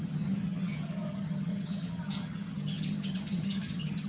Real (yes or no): no